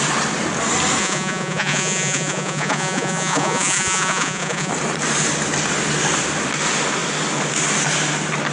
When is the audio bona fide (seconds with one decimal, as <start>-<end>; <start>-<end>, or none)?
0.0-1.0; 4.7-8.5